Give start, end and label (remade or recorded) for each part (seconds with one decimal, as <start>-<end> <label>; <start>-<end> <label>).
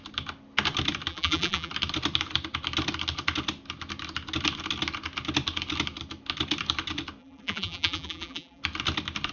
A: 0.0-1.1 recorded; 1.1-1.7 remade; 1.7-7.2 recorded; 7.2-8.6 remade; 8.6-9.3 recorded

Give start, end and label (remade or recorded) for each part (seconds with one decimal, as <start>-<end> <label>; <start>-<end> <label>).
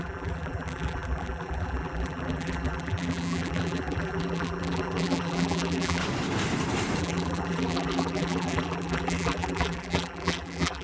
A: 0.0-6.0 remade; 6.0-7.0 recorded; 7.0-10.8 remade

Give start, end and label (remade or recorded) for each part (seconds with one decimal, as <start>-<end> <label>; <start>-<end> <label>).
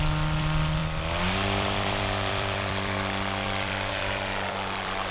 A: 0.0-5.1 remade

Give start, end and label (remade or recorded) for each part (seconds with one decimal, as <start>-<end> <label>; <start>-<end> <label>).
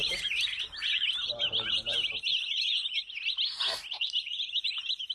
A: 0.0-3.0 remade; 3.0-3.9 recorded; 3.9-5.1 remade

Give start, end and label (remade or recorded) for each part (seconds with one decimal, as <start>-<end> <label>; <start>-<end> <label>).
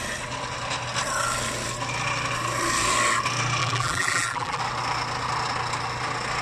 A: 0.0-3.6 recorded; 3.6-4.6 remade; 4.6-6.4 recorded